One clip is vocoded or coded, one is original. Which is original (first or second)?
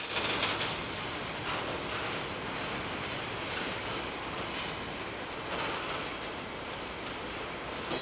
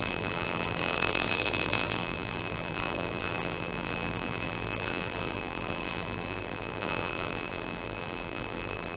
first